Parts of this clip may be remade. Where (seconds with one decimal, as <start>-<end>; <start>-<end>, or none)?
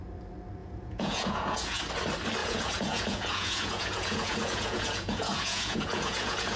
0.6-1.8; 2.4-6.6